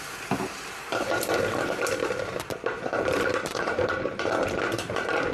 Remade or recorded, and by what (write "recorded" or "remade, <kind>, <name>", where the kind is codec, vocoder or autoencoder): remade, vocoder, BigVGAN v2